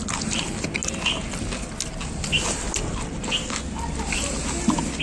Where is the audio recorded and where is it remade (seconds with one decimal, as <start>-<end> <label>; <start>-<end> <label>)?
0.0-5.0 recorded